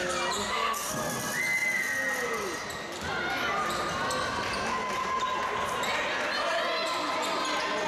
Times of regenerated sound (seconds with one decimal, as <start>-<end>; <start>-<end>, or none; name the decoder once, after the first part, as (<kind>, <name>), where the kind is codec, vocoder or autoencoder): 0.4-1.0 (codec, SNAC)